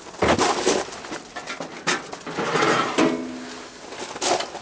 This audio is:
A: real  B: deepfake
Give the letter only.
A